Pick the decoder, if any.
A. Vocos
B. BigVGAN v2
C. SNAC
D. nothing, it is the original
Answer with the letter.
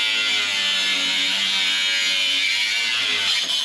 D